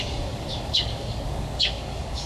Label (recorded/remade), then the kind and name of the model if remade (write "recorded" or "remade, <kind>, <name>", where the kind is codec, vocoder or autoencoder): remade, codec, DAC